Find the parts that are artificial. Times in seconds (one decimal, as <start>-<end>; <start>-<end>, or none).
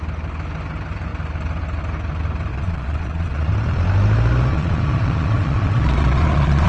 2.5-3.5; 4.5-6.7